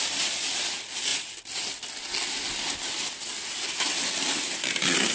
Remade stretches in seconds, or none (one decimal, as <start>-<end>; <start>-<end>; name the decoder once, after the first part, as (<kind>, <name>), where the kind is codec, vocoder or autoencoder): none